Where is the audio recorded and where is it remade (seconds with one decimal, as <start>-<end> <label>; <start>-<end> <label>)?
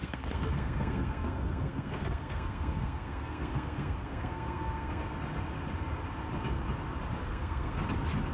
0.0-5.0 remade; 5.0-7.2 recorded; 7.2-7.8 remade; 7.8-8.3 recorded